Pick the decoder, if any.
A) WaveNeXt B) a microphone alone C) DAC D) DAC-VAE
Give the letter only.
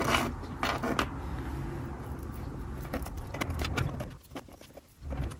B